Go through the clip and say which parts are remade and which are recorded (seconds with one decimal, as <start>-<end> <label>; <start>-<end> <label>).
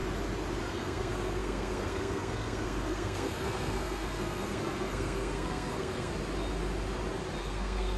0.0-0.6 recorded; 0.6-6.1 remade; 6.1-7.4 recorded; 7.4-8.0 remade